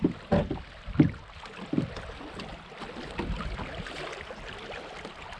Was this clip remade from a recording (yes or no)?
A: no